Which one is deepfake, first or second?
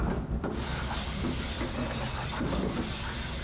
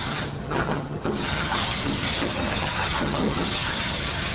second